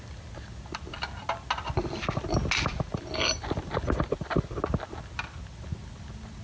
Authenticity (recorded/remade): recorded